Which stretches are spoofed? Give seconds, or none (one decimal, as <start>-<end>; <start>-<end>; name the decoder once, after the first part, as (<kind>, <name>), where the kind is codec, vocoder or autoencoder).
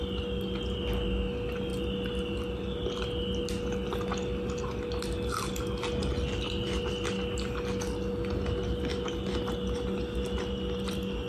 none